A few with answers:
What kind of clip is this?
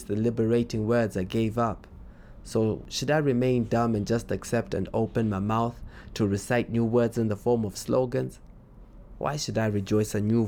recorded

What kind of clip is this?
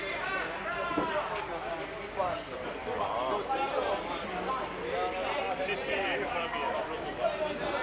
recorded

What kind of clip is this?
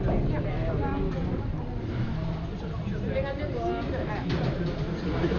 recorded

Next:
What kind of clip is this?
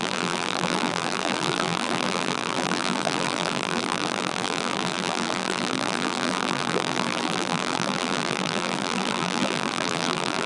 remade